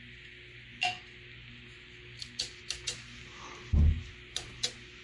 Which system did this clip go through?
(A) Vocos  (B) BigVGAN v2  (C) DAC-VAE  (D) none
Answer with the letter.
D